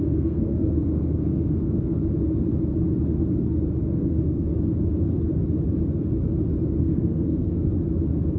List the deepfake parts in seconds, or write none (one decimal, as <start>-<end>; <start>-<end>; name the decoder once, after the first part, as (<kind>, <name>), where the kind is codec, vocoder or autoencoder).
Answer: 0.0-2.0 (codec, SNAC); 3.8-4.5; 6.8-7.7